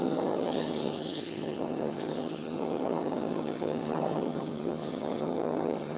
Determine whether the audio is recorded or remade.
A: remade